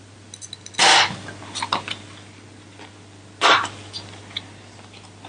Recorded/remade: recorded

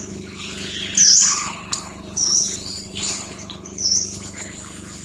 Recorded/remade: remade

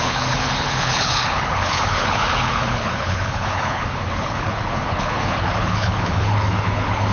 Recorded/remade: remade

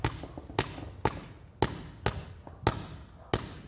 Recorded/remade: recorded